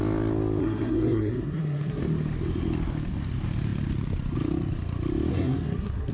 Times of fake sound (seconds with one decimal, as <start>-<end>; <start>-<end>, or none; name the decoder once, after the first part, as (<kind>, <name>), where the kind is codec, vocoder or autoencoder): 0.6-2.0 (codec, SNAC); 5.3-6.1